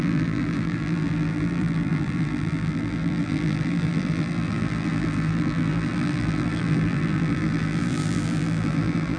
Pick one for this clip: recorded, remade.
remade